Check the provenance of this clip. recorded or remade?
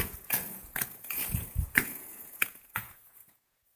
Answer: remade